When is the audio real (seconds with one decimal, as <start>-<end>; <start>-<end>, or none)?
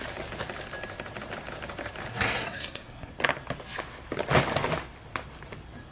0.0-2.1; 3.1-5.9